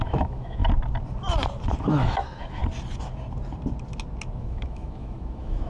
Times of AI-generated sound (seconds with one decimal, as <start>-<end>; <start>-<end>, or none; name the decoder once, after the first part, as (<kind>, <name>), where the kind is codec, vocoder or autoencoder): 0.0-0.6 (autoencoder, DAC-VAE); 1.8-2.6; 4.4-5.7